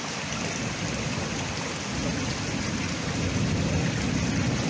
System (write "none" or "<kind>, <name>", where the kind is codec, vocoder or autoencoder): none